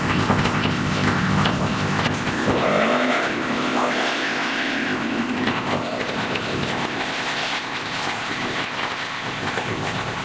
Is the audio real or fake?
fake